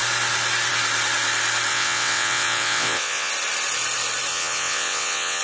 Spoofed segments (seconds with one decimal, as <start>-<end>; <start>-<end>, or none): 1.7-3.3; 4.3-5.4